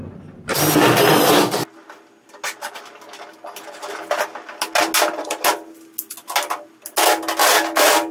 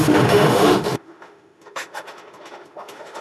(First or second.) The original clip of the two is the first